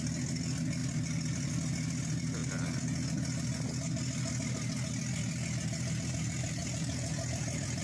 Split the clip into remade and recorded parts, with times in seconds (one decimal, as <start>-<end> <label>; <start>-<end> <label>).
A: 0.0-0.8 recorded; 0.8-1.5 remade; 1.5-6.6 recorded; 6.6-7.8 remade